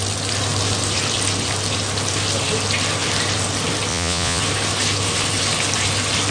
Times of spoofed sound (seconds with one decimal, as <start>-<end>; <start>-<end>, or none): 3.9-4.4